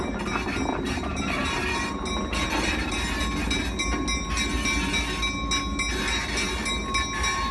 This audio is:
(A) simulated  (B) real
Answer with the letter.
B